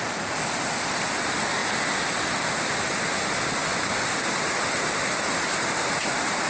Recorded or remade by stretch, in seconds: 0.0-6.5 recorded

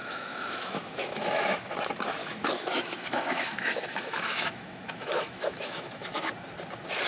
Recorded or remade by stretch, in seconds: 0.0-1.7 remade; 1.7-2.2 recorded; 2.2-6.3 remade; 6.3-7.1 recorded

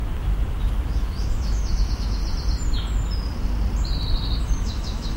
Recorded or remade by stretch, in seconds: 0.0-0.6 recorded; 0.6-2.2 remade; 2.2-4.4 recorded; 4.4-5.2 remade